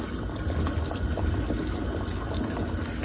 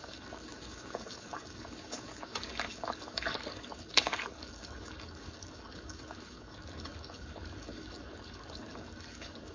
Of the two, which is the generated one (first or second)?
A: second